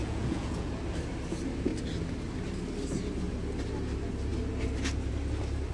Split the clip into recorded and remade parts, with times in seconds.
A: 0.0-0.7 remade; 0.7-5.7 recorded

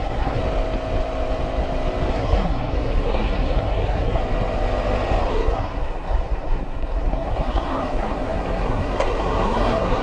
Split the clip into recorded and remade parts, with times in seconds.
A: 0.0-0.4 remade; 0.4-2.1 recorded; 2.1-4.2 remade; 4.2-5.3 recorded; 5.3-10.0 remade

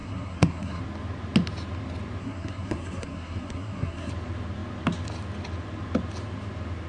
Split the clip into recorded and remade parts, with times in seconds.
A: 0.0-0.8 remade; 0.8-2.2 recorded; 2.2-4.1 remade; 4.1-6.9 recorded